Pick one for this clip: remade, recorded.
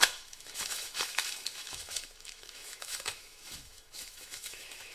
remade